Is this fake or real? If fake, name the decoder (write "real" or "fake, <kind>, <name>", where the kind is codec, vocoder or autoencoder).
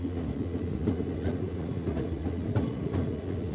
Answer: fake, vocoder, Vocos